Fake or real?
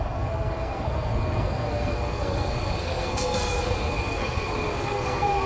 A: fake